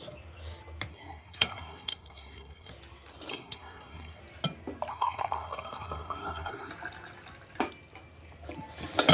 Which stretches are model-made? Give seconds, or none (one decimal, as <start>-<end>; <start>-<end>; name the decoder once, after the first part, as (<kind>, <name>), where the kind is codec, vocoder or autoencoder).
0.9-2.7 (codec, SNAC); 3.3-4.2; 4.9-6.7